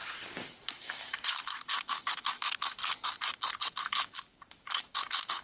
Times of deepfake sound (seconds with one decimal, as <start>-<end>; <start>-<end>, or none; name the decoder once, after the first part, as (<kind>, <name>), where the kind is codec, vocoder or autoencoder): 0.7-2.8 (autoencoder, DAC-VAE); 3.7-5.4